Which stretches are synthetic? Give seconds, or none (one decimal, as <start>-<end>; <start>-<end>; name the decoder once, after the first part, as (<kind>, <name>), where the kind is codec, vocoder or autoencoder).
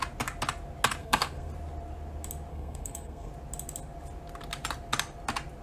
1.0-1.5 (codec, SNAC); 2.5-3.3